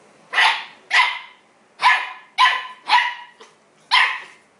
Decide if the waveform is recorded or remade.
recorded